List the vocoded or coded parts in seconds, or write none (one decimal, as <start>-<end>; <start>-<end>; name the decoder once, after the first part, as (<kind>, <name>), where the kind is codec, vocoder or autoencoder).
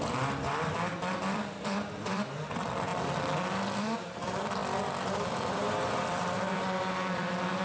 0.0-2.9 (vocoder, BigVGAN v2); 3.8-7.6